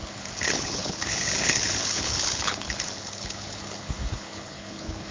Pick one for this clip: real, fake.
fake